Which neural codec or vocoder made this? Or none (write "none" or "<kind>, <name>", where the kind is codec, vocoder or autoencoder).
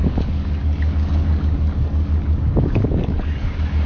codec, DAC